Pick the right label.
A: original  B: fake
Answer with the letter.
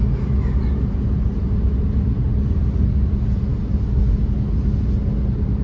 A